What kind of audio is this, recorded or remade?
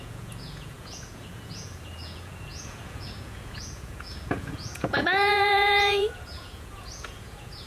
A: remade